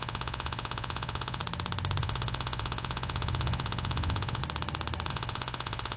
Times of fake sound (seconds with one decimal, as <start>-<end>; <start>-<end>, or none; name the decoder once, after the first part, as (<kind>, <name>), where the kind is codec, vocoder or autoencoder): 0.0-1.4 (vocoder, Vocos); 2.0-4.4; 5.1-6.0